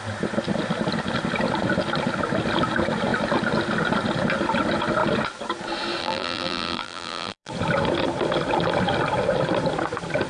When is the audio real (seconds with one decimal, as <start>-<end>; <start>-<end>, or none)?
0.0-6.0; 7.5-10.3